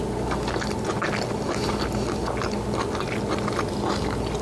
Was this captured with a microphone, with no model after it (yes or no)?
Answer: yes